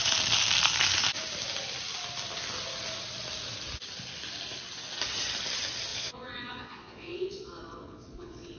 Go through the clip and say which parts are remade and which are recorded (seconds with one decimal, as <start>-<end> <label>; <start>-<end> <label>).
0.0-5.9 recorded; 5.9-8.6 remade